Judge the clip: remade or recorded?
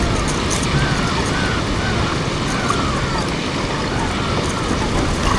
recorded